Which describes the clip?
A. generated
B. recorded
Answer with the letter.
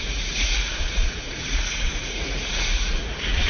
A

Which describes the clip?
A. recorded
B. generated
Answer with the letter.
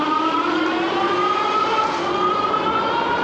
A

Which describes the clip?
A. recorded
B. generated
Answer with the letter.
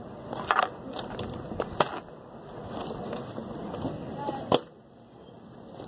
A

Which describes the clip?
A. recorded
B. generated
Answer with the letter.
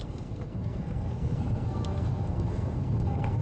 B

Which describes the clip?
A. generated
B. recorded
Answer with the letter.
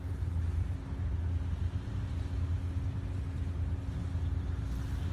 B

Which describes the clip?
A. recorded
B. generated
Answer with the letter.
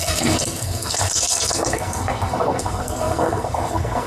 B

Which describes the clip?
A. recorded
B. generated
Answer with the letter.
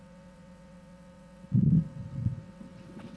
B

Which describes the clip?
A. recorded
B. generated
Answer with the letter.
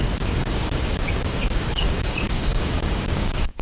B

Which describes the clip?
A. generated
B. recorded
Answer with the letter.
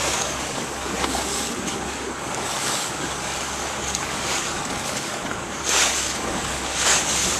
A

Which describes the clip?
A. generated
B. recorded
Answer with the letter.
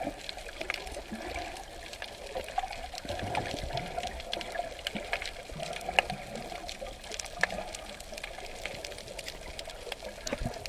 B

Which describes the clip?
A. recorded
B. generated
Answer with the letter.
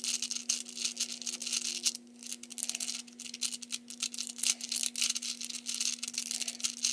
A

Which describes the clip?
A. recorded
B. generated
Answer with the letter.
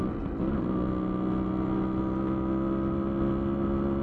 A